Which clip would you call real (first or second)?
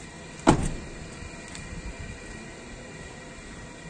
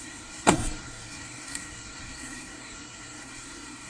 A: first